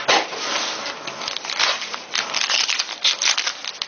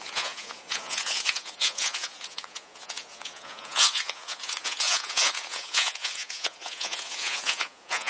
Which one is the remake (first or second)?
second